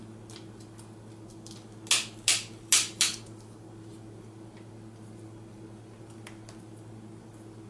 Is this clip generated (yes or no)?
no